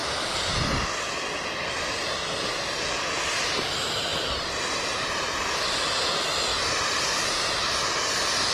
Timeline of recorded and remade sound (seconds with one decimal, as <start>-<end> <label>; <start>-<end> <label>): 0.0-0.6 remade; 0.6-4.1 recorded; 4.1-5.8 remade; 5.8-6.5 recorded; 6.5-7.8 remade; 7.8-8.5 recorded